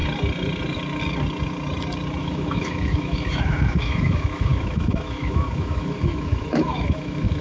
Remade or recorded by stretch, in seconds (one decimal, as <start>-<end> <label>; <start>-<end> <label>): 0.0-2.2 recorded; 2.2-7.4 remade